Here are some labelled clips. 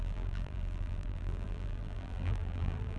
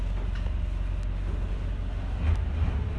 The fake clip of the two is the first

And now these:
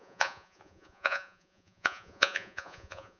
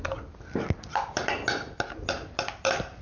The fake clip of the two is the first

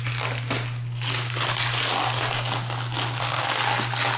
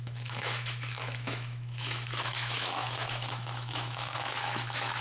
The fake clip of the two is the second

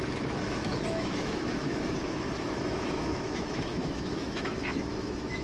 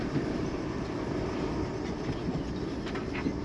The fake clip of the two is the first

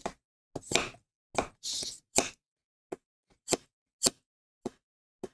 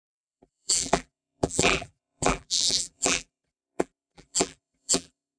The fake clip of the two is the second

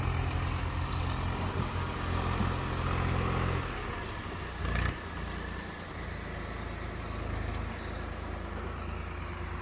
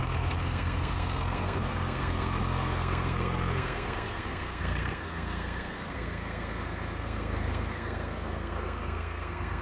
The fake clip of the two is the second